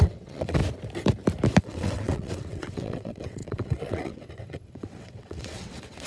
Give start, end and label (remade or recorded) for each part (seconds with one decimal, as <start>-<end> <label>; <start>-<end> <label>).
0.0-0.6 remade; 0.6-1.6 recorded; 1.6-6.1 remade